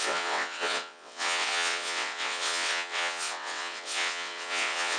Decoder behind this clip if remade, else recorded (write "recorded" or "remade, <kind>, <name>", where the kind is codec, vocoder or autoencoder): remade, vocoder, WaveNeXt